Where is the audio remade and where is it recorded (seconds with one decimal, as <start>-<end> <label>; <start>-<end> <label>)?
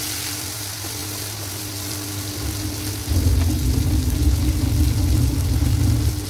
0.0-6.3 recorded